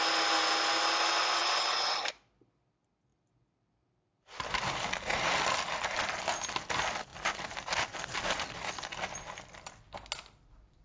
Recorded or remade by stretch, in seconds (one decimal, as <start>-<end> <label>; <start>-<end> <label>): 0.0-3.1 recorded; 3.1-4.7 remade; 4.7-10.8 recorded